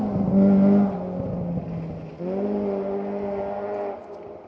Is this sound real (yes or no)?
yes